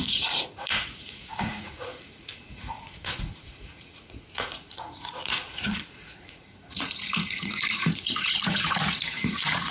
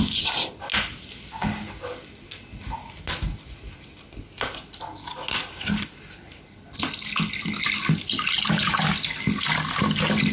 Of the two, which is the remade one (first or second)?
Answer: first